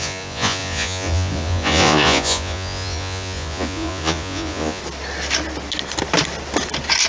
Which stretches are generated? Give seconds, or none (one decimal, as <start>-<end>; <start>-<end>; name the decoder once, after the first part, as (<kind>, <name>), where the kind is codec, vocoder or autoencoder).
0.0-4.8 (vocoder, Vocos)

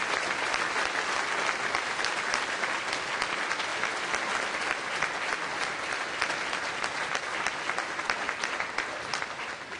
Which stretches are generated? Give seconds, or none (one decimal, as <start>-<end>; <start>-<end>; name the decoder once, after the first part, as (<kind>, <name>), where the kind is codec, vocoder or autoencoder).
none

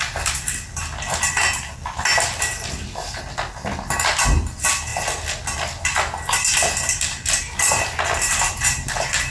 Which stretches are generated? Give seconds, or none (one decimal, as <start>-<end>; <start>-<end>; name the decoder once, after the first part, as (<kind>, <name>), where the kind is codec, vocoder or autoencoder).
none

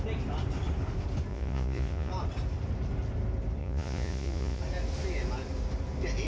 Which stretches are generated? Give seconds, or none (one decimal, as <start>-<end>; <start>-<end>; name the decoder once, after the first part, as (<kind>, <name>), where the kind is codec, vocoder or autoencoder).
1.3-2.1 (vocoder, Vocos); 3.6-4.6

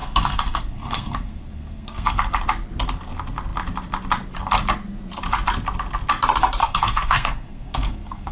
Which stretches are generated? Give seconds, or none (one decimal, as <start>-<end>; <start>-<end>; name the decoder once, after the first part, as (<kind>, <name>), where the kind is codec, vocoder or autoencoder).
0.0-2.1 (codec, SNAC); 6.6-8.3

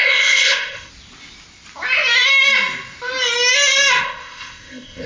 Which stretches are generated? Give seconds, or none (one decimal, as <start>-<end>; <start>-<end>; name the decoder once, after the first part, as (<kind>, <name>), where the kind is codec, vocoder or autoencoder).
0.0-0.9 (codec, ZipCodec); 4.0-5.1